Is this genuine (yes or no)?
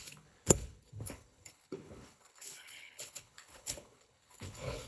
no